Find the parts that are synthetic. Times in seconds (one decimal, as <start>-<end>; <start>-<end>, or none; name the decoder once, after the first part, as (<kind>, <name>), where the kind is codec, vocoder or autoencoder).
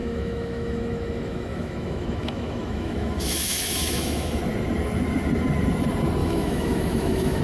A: 0.0-4.4 (autoencoder, DAC-VAE); 6.2-7.4